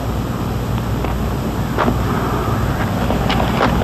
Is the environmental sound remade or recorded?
recorded